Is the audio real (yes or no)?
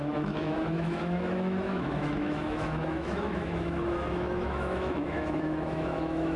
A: no